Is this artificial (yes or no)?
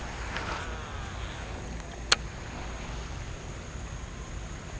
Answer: no